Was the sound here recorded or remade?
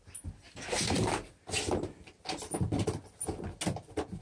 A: recorded